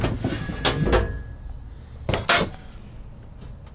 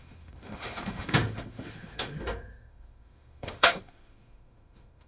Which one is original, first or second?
first